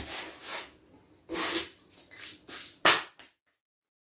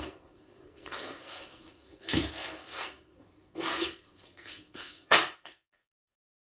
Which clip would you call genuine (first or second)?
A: first